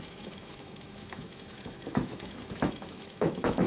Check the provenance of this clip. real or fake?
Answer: fake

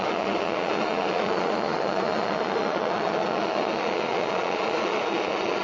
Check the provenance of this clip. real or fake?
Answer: fake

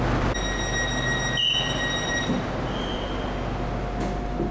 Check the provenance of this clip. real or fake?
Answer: real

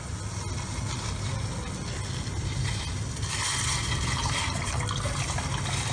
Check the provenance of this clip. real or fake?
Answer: real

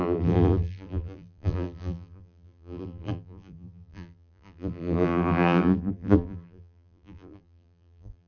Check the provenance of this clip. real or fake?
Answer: fake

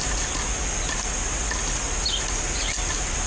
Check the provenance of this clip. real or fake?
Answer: real